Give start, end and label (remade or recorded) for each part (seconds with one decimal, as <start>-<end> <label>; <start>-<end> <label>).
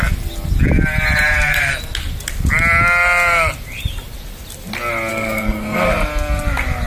0.0-5.1 recorded; 5.1-5.9 remade; 5.9-6.9 recorded